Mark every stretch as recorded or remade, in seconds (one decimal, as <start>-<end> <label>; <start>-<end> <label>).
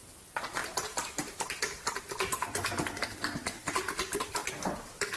0.0-5.2 recorded